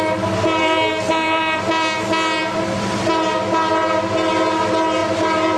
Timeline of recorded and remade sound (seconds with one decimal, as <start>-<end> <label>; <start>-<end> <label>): 0.0-0.6 recorded; 0.6-1.6 remade; 1.6-5.6 recorded